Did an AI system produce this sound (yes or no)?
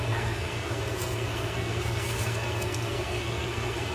yes